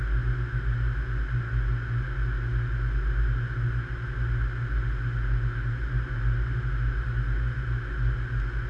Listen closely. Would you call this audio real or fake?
real